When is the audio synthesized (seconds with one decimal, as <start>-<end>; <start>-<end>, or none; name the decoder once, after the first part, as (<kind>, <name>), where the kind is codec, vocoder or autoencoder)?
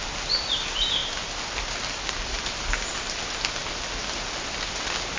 none